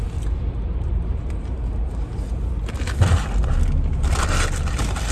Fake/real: fake